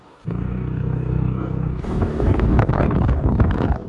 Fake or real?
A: fake